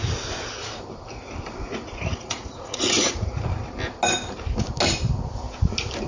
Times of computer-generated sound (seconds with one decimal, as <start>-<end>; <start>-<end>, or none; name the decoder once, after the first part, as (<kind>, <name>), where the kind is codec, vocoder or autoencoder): 1.6-3.4 (vocoder, Vocos)